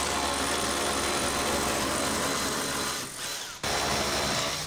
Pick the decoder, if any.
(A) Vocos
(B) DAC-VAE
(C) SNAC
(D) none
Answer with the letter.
D